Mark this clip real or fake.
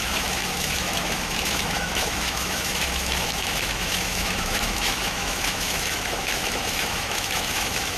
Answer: fake